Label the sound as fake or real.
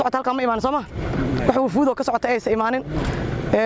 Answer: real